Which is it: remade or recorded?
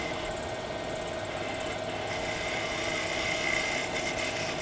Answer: recorded